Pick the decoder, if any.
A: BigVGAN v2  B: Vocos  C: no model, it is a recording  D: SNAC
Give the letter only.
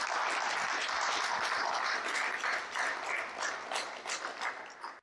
C